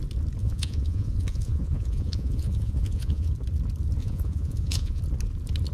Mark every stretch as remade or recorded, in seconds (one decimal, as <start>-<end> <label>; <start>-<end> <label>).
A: 0.0-0.4 recorded; 0.4-3.3 remade; 3.3-4.0 recorded; 4.0-5.0 remade; 5.0-5.7 recorded